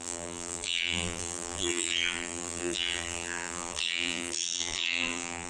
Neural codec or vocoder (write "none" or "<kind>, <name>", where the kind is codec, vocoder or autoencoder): vocoder, BigVGAN v2